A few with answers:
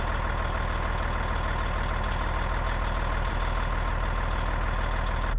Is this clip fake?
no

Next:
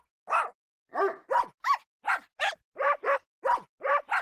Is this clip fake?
no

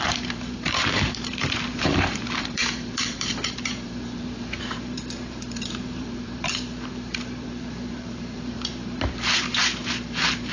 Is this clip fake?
yes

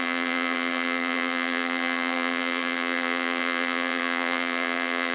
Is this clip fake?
yes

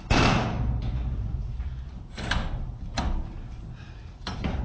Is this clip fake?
yes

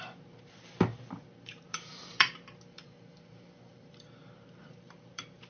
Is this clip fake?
yes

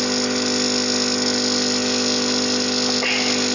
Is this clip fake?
no